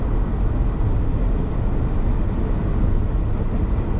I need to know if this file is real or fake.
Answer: real